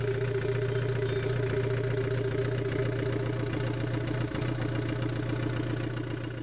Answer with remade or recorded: recorded